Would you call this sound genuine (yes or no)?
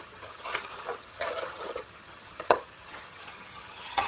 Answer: no